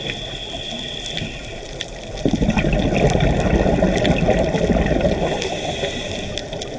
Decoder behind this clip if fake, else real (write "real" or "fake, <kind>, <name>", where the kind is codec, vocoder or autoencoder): real